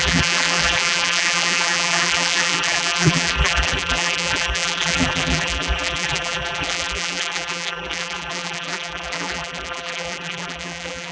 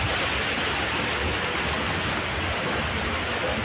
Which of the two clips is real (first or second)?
second